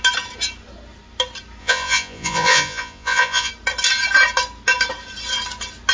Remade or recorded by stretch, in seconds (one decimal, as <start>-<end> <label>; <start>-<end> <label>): 0.0-1.6 recorded; 1.6-3.5 remade; 3.5-5.9 recorded

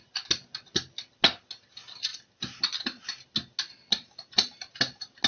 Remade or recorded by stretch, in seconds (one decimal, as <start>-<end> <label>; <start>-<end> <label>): 0.0-5.3 recorded

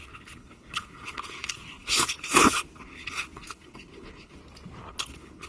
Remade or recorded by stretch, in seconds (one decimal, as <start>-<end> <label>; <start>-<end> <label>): 0.0-4.4 remade; 4.4-4.9 recorded; 4.9-5.5 remade

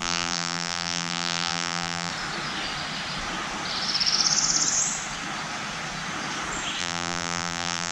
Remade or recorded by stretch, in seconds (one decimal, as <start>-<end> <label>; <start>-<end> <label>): 0.0-2.1 remade; 2.1-6.8 recorded; 6.8-7.9 remade

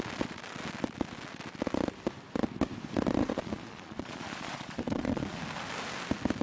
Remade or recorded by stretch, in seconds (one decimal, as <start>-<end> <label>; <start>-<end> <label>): 0.0-3.2 recorded; 3.2-5.4 remade; 5.4-6.4 recorded

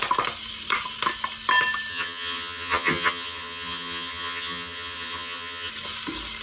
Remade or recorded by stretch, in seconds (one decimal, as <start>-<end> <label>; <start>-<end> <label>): 0.0-1.9 recorded; 1.9-5.7 remade; 5.7-6.4 recorded

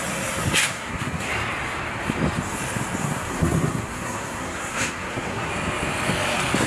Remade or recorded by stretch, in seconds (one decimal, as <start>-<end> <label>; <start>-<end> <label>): 0.0-0.6 recorded; 0.6-1.3 remade; 1.3-3.0 recorded; 3.0-5.5 remade; 5.5-6.7 recorded

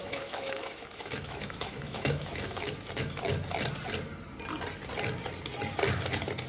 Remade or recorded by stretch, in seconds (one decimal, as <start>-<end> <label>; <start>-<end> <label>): 0.0-2.7 remade; 2.7-6.5 recorded